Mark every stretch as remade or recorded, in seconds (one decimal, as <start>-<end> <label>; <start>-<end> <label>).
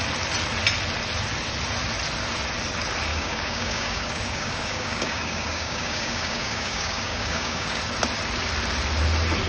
0.0-3.1 recorded; 3.1-7.8 remade; 7.8-9.5 recorded